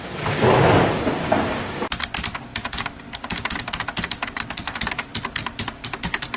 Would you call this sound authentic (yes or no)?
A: no